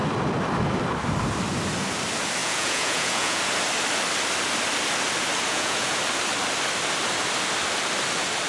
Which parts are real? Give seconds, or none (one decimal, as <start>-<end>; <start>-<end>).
0.0-2.4; 3.4-5.5; 6.0-8.5